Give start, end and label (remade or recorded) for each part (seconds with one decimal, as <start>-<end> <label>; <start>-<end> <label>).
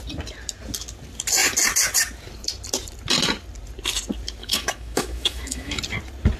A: 0.0-4.4 recorded; 4.4-5.8 remade; 5.8-6.4 recorded